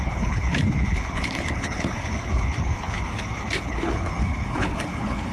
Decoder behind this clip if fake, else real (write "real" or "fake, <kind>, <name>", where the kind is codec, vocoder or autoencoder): fake, codec, HILCodec